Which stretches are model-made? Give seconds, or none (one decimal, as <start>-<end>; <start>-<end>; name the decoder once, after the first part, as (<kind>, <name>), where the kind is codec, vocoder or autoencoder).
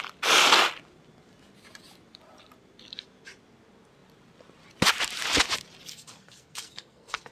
5.9-7.3 (codec, SNAC)